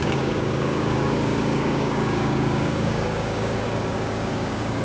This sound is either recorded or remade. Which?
remade